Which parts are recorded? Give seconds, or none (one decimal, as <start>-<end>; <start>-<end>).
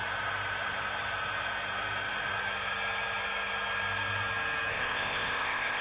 0.0-4.7